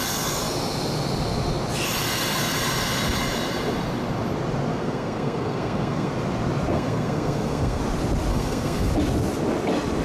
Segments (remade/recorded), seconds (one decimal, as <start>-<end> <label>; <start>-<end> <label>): 0.0-4.7 recorded; 4.7-6.1 remade; 6.1-6.7 recorded; 6.7-7.8 remade; 7.8-8.3 recorded; 8.3-8.9 remade; 8.9-10.0 recorded